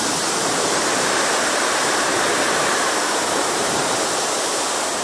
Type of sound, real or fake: fake